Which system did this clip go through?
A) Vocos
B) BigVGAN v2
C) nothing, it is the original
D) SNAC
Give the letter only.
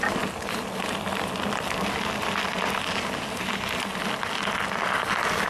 C